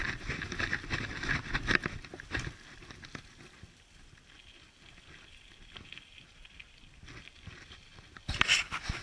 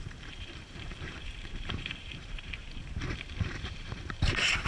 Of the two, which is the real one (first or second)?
first